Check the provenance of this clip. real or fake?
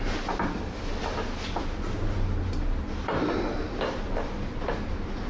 real